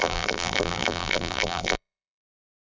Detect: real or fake fake